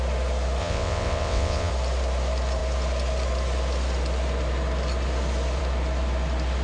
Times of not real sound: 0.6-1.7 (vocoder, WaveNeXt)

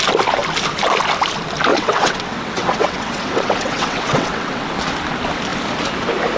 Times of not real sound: 1.7-4.6 (vocoder, WaveNeXt)

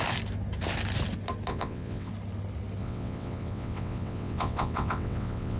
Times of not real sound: 1.5-2.1 (vocoder, WaveNeXt); 2.8-5.6

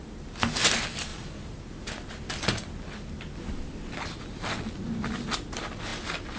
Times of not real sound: none

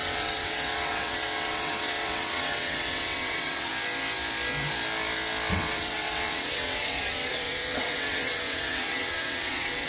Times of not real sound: 0.0-3.7 (vocoder, WaveNeXt); 5.5-9.9

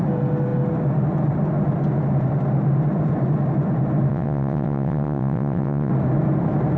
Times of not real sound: 4.1-5.9 (vocoder, WaveNeXt)

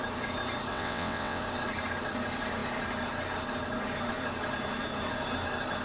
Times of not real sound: 0.7-1.4 (vocoder, WaveNeXt)

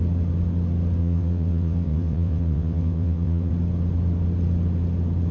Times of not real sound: 1.0-3.5 (vocoder, WaveNeXt)